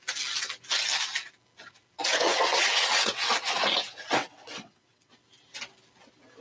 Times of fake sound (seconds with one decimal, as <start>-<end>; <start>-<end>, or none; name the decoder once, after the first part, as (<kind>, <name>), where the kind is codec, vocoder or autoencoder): 2.1-3.3 (vocoder, WaveNeXt); 4.2-5.1